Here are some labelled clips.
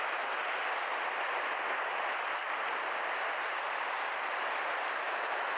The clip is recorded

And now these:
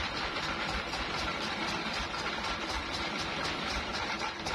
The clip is recorded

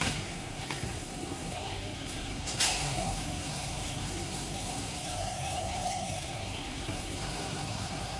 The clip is remade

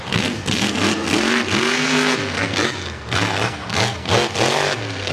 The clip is remade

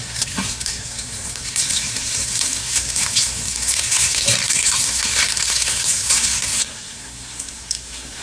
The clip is remade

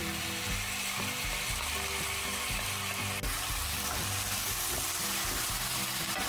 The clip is recorded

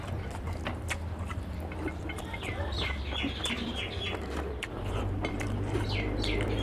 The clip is recorded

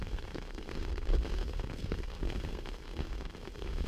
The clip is remade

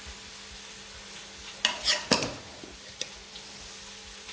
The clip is recorded